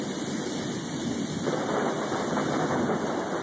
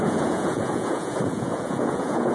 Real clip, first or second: first